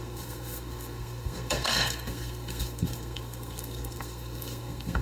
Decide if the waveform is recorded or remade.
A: remade